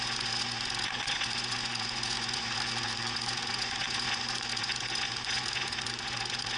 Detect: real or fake fake